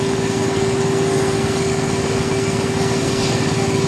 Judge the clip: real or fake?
fake